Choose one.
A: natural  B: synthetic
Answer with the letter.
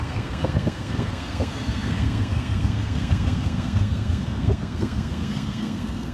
B